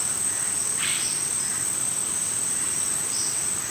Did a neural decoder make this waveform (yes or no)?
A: no